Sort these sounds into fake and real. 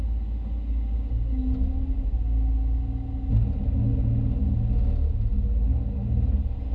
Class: real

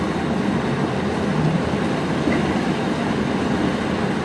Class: real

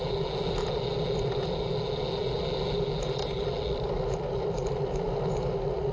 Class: real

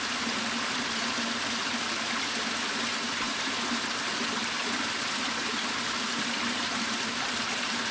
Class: fake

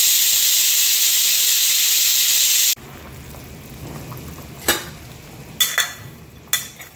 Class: real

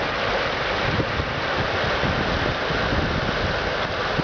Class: real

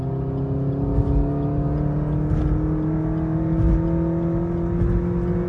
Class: real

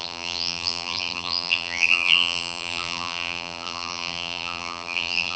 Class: fake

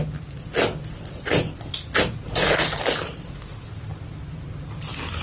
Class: real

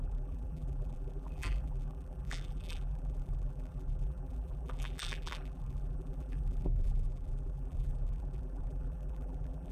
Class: fake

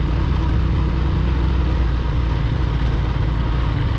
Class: real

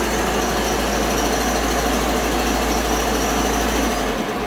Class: real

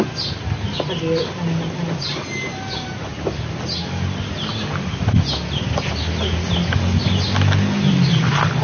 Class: real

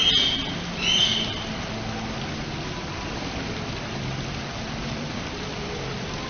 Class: real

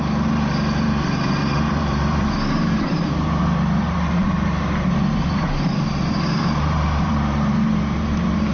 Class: fake